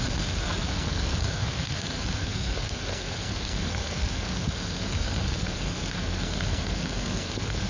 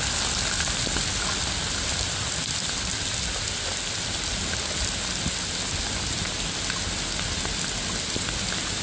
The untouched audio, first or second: second